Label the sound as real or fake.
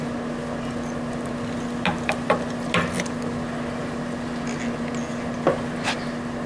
real